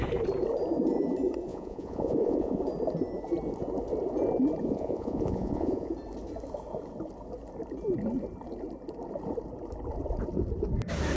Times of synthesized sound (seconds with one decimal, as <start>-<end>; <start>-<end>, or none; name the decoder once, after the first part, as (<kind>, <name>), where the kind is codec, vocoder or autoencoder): 1.5-2.6 (vocoder, Vocos); 4.6-5.9